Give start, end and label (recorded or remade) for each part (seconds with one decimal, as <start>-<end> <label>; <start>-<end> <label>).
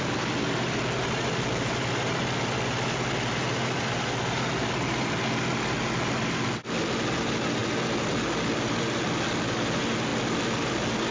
0.0-11.1 recorded